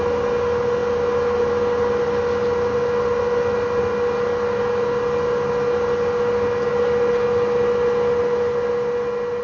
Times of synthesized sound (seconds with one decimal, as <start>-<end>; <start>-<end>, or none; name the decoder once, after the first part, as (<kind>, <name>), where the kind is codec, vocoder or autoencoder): none